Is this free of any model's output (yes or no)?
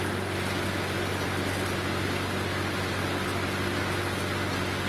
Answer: yes